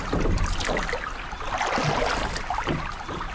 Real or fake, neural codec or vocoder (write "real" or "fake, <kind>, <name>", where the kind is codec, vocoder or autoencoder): real